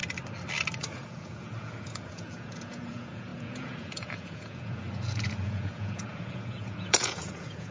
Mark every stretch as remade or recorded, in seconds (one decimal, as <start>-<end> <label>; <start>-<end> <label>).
0.0-0.9 recorded; 0.9-7.7 remade